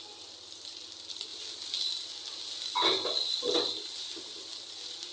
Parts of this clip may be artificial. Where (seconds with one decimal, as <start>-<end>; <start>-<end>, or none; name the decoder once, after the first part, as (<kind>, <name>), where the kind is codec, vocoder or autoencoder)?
1.3-1.8 (vocoder, BigVGAN v2)